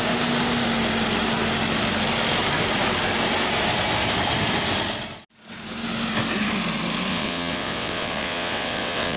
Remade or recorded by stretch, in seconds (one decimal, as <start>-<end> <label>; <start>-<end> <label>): 0.0-7.1 recorded; 7.1-9.2 remade